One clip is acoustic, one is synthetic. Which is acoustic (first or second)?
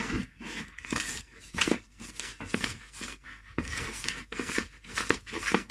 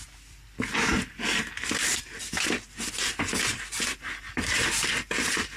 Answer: second